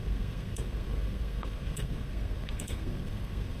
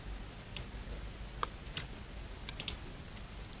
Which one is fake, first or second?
first